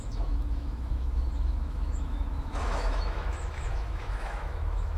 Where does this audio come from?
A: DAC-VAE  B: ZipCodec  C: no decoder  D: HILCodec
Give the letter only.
A